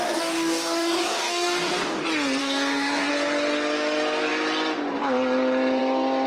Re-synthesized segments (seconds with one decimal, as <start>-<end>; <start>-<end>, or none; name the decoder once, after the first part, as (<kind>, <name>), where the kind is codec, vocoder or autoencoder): 0.0-2.0 (codec, DAC); 2.4-3.1

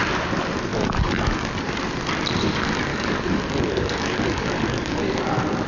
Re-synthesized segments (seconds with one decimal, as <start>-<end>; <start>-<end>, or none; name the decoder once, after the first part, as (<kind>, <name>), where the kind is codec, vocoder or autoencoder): 0.7-1.5 (codec, DAC); 2.9-5.2

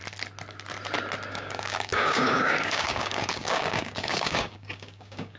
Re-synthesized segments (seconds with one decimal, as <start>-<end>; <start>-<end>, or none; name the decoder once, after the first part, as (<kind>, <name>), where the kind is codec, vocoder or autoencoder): 1.3-5.4 (codec, DAC)

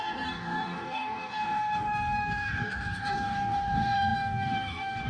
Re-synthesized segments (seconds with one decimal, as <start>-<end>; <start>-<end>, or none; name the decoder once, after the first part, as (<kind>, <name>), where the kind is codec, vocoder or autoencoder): 0.0-5.1 (codec, DAC)

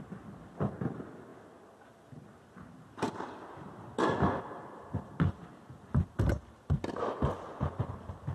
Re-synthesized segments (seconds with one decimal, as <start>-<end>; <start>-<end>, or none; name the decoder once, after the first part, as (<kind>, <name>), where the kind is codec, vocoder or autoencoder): none

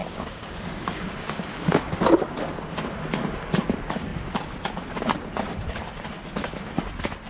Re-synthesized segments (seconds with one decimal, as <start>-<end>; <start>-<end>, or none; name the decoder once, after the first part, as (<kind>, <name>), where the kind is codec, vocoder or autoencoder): 0.0-2.0 (codec, DAC)